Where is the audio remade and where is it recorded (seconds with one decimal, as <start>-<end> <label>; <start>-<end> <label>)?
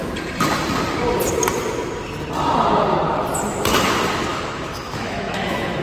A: 0.0-4.3 recorded; 4.3-5.8 remade